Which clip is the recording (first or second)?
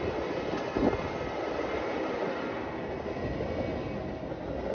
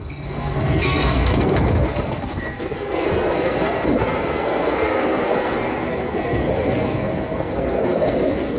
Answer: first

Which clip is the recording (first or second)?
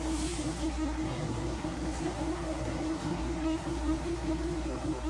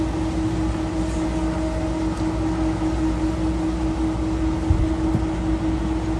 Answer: second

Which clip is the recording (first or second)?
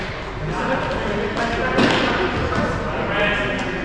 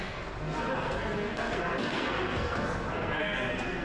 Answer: first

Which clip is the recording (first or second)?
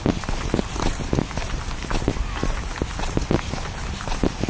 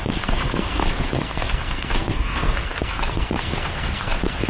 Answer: first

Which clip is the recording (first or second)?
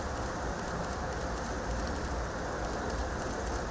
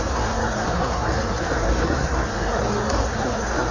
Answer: first